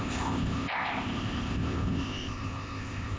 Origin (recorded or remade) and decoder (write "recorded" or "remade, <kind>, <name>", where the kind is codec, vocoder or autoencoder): remade, codec, ZipCodec